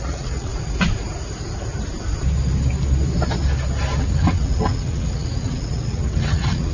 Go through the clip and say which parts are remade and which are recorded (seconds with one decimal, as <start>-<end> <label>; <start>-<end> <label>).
0.0-0.5 remade; 0.5-4.0 recorded; 4.0-6.7 remade